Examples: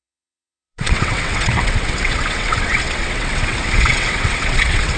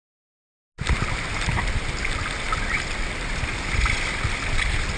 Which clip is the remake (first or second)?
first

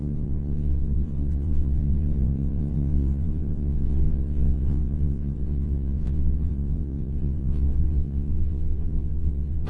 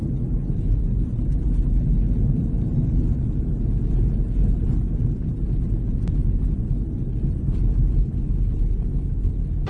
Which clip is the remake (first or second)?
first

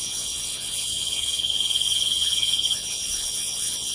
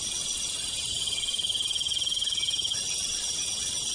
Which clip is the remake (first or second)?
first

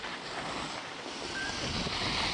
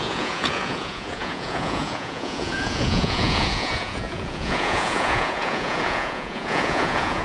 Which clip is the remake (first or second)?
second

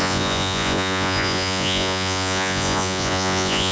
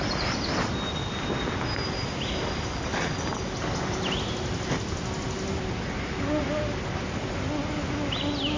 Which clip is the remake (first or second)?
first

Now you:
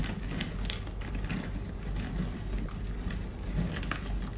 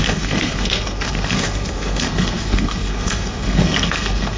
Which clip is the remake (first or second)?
second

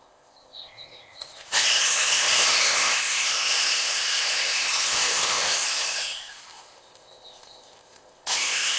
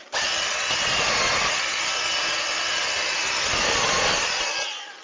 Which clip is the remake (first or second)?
first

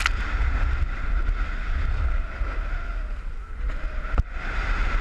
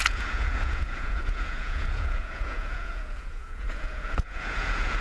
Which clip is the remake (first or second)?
second